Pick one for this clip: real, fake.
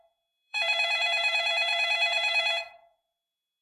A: fake